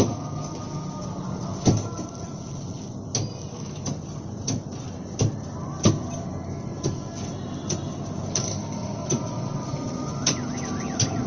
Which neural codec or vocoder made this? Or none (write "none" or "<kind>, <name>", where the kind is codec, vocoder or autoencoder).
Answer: none